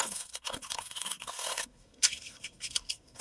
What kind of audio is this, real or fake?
fake